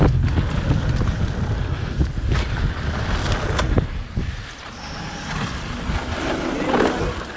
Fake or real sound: real